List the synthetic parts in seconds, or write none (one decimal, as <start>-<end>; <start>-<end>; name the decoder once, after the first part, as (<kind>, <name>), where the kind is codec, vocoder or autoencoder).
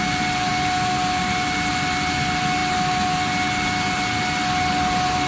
none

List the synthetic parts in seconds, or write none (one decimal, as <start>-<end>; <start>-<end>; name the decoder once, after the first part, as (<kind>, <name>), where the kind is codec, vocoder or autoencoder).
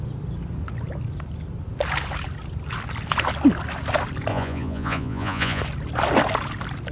4.3-5.6 (vocoder, Vocos)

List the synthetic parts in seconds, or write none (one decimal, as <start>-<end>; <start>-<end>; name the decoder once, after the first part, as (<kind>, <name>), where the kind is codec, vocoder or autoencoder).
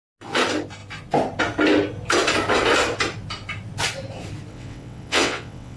4.5-5.8 (vocoder, WaveNeXt)